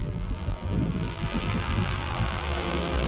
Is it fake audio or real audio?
fake